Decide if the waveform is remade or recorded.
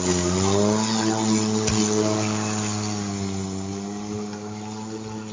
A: recorded